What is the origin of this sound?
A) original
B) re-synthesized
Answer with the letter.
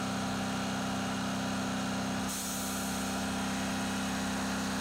A